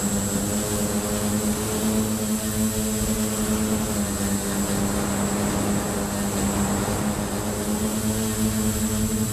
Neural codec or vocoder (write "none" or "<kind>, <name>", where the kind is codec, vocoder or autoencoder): none